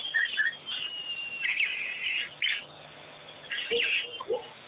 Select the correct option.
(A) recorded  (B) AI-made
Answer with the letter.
A